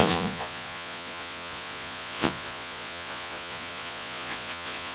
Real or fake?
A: fake